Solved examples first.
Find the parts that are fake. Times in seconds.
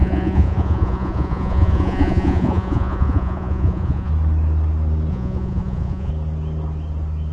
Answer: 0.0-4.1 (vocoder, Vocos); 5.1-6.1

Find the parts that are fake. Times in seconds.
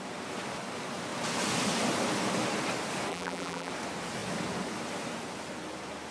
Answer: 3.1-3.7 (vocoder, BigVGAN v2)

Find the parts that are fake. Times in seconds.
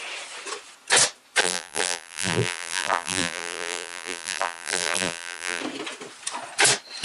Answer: 1.4-5.6 (vocoder, BigVGAN v2)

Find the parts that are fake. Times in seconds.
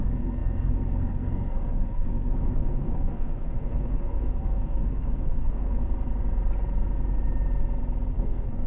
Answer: 0.0-5.8 (codec, SNAC); 8.1-8.7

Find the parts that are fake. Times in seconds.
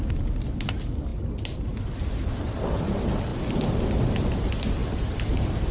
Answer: 3.3-4.3 (vocoder, BigVGAN v2); 4.8-5.7